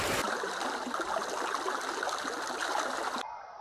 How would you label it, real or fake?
real